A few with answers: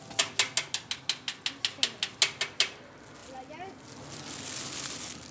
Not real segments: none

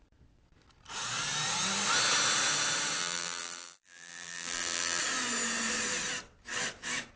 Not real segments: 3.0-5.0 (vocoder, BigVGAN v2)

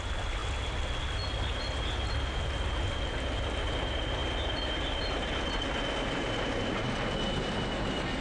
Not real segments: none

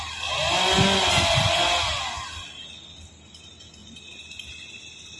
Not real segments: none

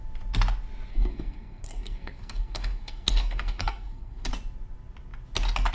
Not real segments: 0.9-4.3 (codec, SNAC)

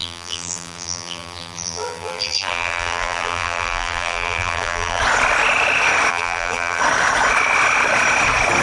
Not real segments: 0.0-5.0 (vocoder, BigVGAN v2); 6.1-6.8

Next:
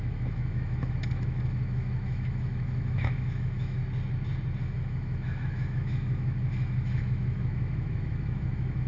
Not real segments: 0.0-3.8 (autoencoder, DAC-VAE); 4.6-8.9

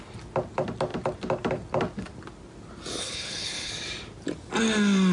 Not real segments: 3.0-3.7 (codec, HILCodec)